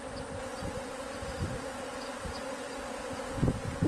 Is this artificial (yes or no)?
no